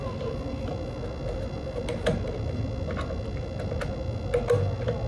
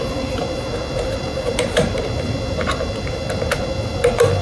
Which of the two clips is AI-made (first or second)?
second